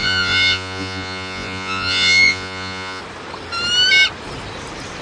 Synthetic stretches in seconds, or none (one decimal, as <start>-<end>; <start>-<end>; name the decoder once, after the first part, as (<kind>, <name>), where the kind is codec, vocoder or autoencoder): 0.0-3.0 (vocoder, Vocos)